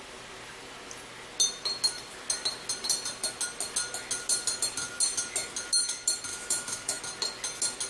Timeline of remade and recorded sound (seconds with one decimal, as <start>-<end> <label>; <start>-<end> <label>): 0.0-6.3 recorded; 6.3-7.0 remade; 7.0-7.9 recorded